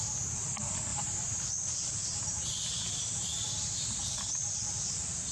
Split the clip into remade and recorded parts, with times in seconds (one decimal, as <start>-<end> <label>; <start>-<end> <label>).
0.0-0.9 recorded; 0.9-4.1 remade; 4.1-5.3 recorded